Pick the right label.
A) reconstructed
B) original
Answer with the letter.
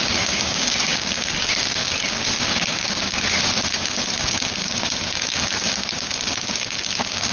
A